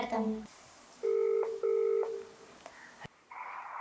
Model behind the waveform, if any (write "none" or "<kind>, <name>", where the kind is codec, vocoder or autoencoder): none